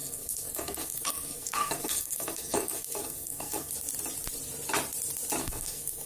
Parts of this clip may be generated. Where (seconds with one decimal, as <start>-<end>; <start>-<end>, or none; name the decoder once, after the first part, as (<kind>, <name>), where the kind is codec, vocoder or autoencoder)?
0.0-3.7 (codec, SNAC); 5.4-6.1